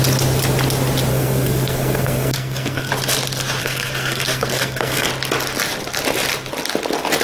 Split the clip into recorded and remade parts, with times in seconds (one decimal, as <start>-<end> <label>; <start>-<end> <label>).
0.0-1.1 recorded; 1.1-2.9 remade; 2.9-3.6 recorded; 3.6-5.1 remade; 5.1-7.2 recorded